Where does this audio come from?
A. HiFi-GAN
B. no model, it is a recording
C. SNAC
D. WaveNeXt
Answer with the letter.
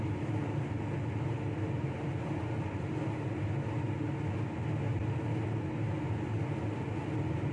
B